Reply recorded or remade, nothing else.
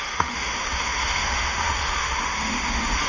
remade